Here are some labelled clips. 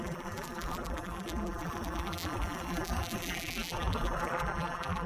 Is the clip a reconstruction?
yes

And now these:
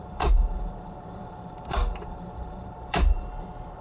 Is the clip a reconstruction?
yes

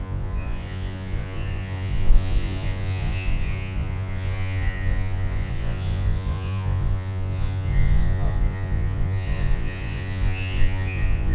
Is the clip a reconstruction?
yes